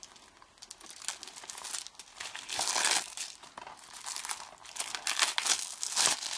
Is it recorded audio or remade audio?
recorded